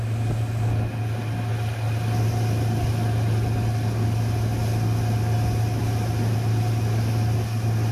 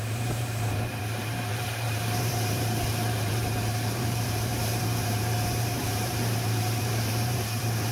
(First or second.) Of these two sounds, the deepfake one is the second